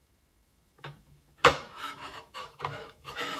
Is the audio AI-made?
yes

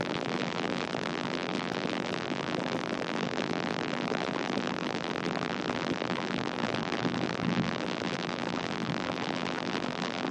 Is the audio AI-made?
yes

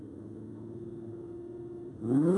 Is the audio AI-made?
yes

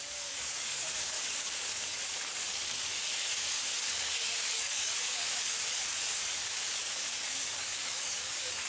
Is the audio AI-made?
yes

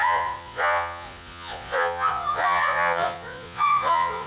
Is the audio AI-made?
yes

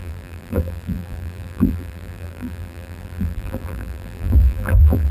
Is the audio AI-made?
yes